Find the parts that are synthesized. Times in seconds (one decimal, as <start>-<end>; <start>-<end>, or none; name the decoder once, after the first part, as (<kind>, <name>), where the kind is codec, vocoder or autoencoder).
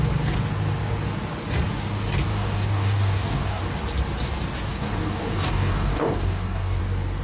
2.3-3.6 (codec, DAC); 4.7-6.8